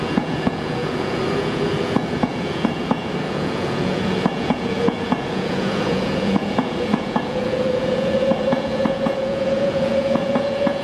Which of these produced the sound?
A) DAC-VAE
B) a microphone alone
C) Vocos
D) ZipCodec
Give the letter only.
C